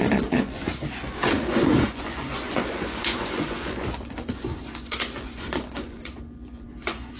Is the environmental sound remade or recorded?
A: remade